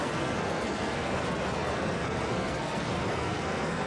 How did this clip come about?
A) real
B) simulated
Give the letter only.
B